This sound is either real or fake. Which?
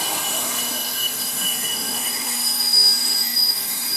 fake